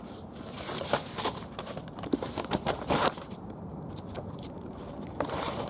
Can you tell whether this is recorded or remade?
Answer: remade